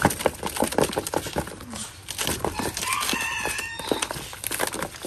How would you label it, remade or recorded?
recorded